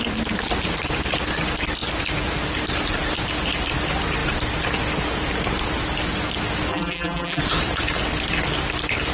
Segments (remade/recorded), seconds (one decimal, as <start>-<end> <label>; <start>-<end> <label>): 0.0-6.7 recorded; 6.7-7.4 remade; 7.4-9.1 recorded